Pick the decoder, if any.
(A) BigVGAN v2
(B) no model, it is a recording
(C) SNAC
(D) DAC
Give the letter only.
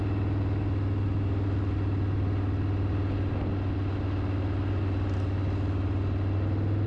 B